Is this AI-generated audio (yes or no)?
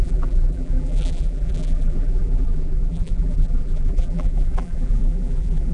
yes